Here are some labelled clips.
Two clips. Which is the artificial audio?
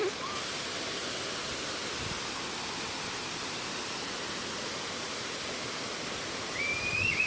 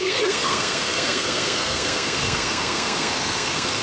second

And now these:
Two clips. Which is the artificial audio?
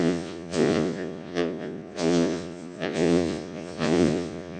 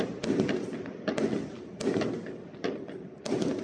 first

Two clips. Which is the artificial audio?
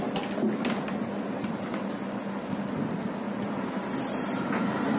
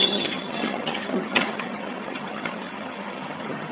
second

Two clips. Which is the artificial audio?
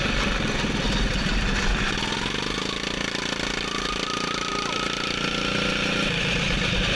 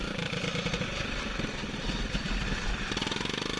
second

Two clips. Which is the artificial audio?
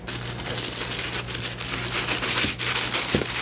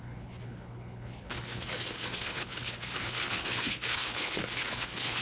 second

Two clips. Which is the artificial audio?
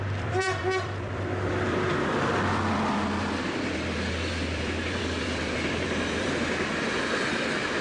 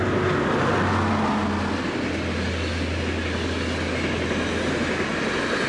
first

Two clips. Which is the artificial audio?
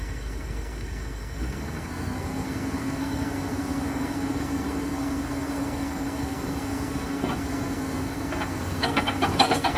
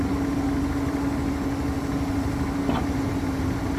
first